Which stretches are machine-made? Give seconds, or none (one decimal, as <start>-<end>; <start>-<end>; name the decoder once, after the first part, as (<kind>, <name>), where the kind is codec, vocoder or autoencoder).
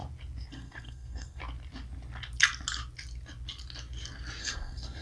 0.5-1.4 (codec, SNAC); 4.4-5.0